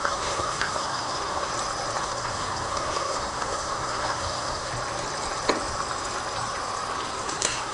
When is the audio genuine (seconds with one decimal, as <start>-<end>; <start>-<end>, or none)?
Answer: 1.5-2.0; 4.7-7.2